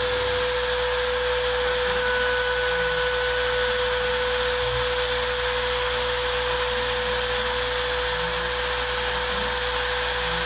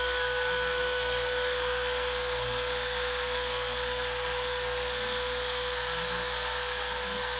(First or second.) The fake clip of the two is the second